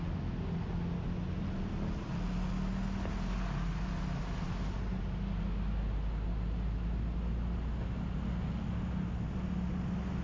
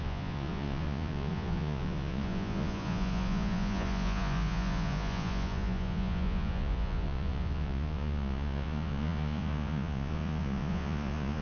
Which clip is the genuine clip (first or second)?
first